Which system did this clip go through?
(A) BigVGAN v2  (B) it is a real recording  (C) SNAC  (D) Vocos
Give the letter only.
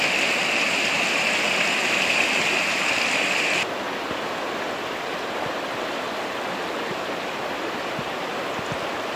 B